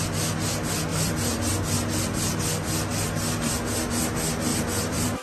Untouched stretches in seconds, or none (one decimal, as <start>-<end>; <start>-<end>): 0.0-0.9; 1.5-2.9; 3.5-4.5